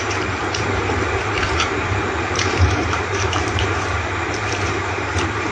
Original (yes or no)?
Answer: no